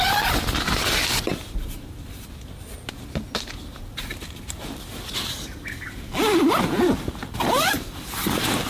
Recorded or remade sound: recorded